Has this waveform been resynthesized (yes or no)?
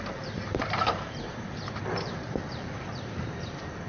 yes